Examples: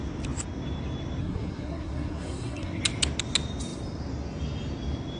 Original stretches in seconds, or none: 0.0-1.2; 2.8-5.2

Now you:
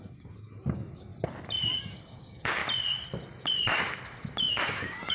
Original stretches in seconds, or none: 1.1-1.8; 2.6-4.5

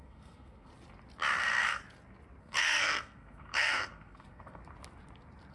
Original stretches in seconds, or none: 0.7-1.4; 1.8-2.4; 4.6-5.5

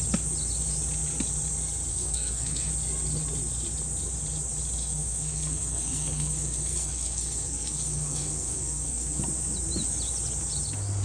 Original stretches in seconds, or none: 0.0-1.9; 2.7-4.8; 9.2-11.0